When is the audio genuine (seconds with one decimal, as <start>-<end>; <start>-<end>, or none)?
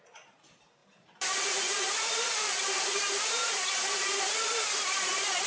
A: 0.0-0.8; 3.3-5.5